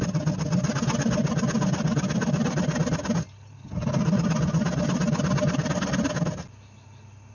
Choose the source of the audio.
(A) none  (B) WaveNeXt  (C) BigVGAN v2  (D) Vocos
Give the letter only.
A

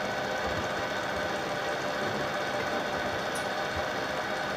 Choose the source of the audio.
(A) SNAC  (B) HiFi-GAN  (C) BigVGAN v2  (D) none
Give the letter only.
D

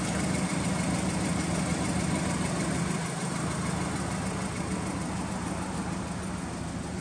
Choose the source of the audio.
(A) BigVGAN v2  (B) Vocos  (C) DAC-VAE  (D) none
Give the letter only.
D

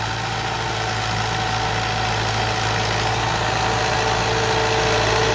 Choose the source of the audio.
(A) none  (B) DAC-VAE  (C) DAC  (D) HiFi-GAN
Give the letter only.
A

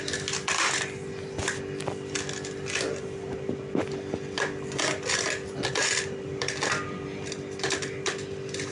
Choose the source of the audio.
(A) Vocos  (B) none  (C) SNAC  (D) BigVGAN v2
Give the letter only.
B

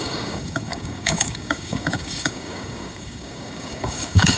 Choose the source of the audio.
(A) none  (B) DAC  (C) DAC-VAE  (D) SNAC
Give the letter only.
B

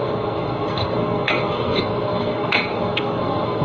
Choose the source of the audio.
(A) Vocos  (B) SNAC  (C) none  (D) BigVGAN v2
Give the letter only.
B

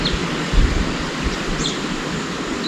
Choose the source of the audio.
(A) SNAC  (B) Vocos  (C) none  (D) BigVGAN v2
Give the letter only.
C